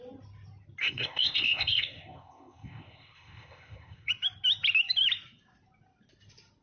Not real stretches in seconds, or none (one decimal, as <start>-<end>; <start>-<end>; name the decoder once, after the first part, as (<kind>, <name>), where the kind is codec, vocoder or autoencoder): 0.8-4.1 (codec, ZipCodec)